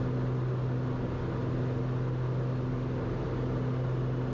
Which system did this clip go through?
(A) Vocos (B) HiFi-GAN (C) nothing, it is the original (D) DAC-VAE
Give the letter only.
C